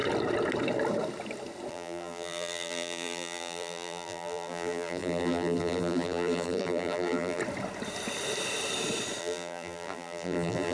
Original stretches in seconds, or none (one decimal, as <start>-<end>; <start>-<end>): 0.0-1.7; 7.4-9.2